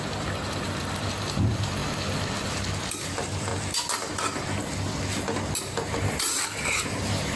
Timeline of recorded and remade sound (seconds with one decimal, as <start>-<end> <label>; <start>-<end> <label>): 0.0-1.8 remade; 1.8-2.5 recorded; 2.5-3.5 remade; 3.5-5.6 recorded; 5.6-7.4 remade